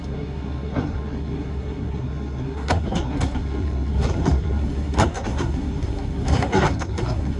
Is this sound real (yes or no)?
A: no